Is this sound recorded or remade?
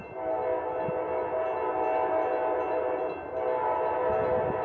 recorded